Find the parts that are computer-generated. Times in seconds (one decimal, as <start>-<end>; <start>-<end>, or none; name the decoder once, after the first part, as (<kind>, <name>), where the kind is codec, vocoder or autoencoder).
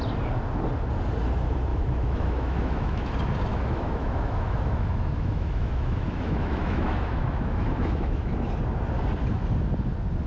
1.7-3.1 (autoencoder, DAC-VAE); 3.5-8.3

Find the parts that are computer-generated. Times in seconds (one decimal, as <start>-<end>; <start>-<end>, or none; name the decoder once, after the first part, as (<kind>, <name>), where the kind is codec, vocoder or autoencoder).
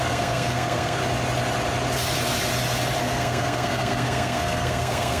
0.0-1.0 (codec, SNAC); 3.0-5.2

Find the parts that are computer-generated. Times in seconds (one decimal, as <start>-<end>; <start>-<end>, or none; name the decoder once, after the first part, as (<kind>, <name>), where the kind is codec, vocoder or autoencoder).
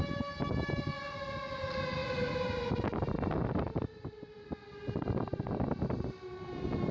none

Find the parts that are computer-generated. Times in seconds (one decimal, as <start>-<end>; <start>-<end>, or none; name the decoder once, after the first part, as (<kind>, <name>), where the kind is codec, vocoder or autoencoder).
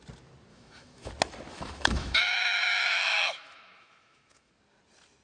0.5-1.1 (autoencoder, DAC-VAE); 1.5-4.5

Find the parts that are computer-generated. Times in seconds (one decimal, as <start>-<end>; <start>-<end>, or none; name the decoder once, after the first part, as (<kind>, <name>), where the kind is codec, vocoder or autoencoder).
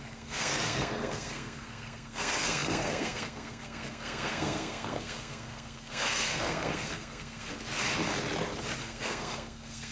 0.0-7.5 (codec, SNAC); 8.8-9.9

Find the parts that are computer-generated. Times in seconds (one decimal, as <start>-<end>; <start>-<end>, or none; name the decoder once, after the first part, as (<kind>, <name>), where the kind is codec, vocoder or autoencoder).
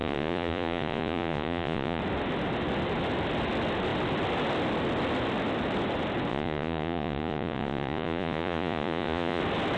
0.0-2.0 (vocoder, Vocos); 6.3-9.4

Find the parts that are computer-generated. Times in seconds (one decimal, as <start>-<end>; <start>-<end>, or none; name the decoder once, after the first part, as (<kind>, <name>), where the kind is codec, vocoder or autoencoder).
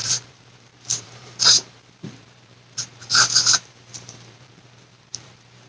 0.0-5.7 (vocoder, BigVGAN v2)